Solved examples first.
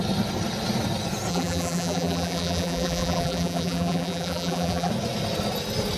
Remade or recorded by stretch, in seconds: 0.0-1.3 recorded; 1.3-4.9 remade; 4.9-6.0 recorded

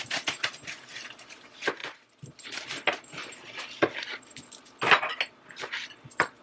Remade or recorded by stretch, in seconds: 0.0-6.4 recorded

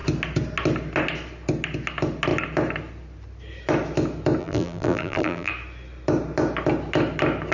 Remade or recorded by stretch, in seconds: 0.0-4.4 recorded; 4.4-5.5 remade; 5.5-7.5 recorded

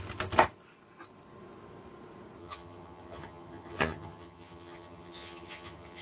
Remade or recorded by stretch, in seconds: 0.0-2.4 recorded; 2.4-6.0 remade

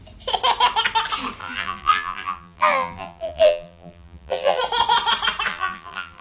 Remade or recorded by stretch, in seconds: 0.0-1.4 recorded; 1.4-4.6 remade; 4.6-5.5 recorded; 5.5-6.2 remade

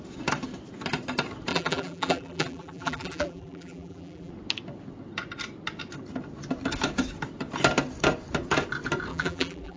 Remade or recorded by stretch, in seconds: 0.0-1.5 recorded; 1.5-4.3 remade; 4.3-9.1 recorded; 9.1-9.8 remade

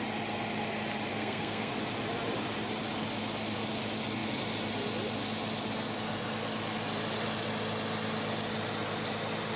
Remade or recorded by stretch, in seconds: 0.0-1.1 recorded; 1.1-1.7 remade; 1.7-9.6 recorded